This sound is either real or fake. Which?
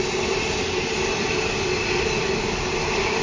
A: real